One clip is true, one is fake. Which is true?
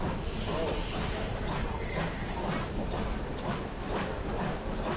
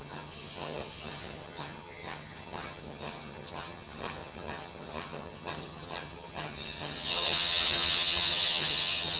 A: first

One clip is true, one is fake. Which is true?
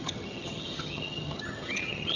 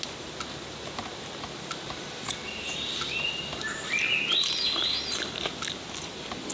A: second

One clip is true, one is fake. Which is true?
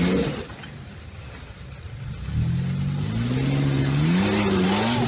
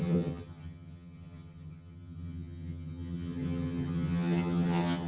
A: first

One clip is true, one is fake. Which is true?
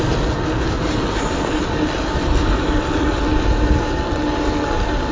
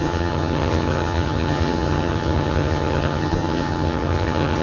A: first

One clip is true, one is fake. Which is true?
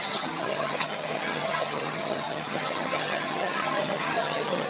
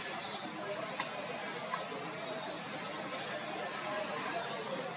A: second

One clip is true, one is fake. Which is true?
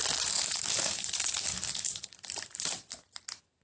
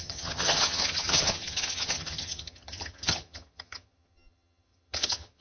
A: first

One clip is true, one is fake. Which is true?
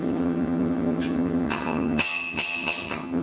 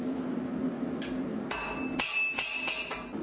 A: second